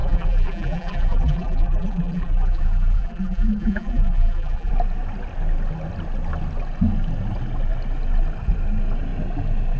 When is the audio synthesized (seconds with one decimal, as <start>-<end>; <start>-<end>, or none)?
0.0-4.7